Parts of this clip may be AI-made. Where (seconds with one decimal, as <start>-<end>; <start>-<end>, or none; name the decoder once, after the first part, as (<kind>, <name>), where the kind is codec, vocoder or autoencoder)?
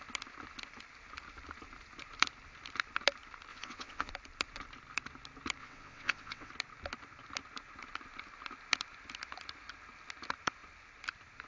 3.5-4.1 (vocoder, WaveNeXt); 5.6-6.5